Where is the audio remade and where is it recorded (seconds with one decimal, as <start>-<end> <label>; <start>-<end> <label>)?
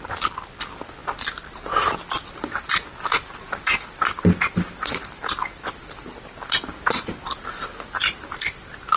0.0-9.0 recorded